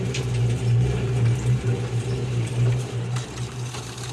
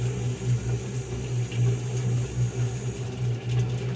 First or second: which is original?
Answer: second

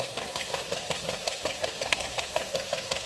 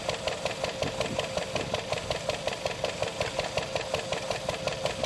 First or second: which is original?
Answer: second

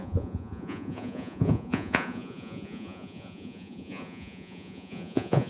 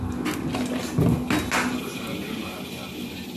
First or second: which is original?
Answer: second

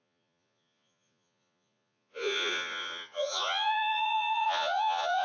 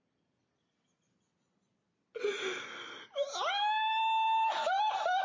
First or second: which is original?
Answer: second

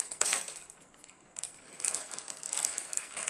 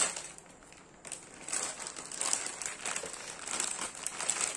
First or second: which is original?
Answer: second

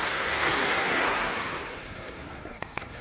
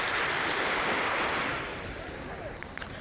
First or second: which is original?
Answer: second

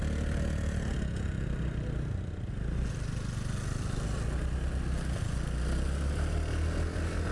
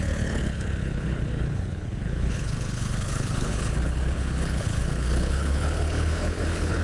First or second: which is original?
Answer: first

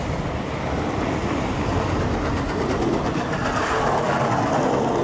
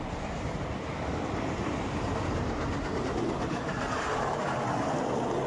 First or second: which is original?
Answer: first